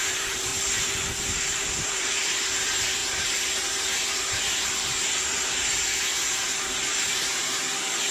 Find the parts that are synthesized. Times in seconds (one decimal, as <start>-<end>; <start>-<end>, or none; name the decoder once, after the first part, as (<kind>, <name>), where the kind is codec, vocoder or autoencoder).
0.0-0.5 (vocoder, BigVGAN v2); 1.2-8.1